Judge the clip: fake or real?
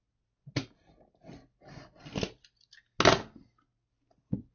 real